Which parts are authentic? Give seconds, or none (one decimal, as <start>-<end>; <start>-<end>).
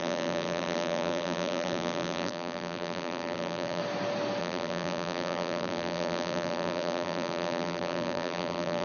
3.8-4.4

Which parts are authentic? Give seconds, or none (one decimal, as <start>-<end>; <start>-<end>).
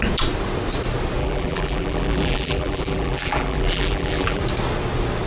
0.0-1.2; 4.4-5.3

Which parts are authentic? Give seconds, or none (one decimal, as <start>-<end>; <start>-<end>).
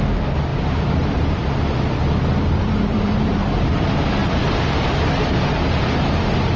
0.0-0.5; 1.6-2.6; 3.7-6.6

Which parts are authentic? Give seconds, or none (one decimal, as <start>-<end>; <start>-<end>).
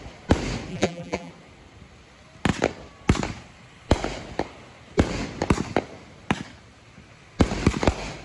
0.0-0.7; 1.3-8.2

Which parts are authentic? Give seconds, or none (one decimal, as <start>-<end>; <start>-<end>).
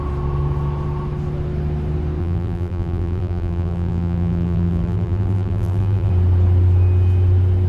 0.0-2.2; 6.1-7.7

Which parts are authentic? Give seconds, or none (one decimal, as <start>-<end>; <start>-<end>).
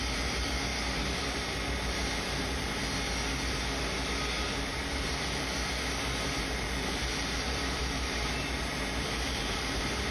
2.8-4.4